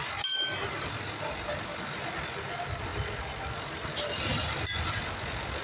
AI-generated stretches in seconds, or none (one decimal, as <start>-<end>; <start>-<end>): none